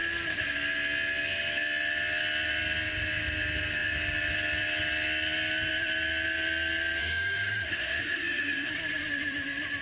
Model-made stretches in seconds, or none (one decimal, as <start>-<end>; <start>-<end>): 7.0-8.7